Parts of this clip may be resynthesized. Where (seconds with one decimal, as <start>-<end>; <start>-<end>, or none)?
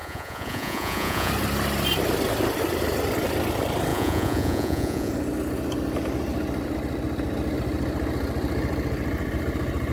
0.0-1.3; 3.9-5.1